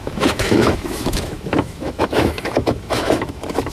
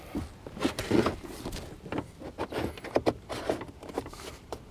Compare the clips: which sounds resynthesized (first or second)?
first